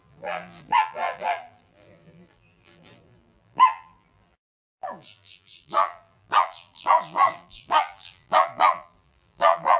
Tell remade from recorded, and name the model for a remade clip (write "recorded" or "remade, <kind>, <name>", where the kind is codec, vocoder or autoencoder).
remade, vocoder, BigVGAN v2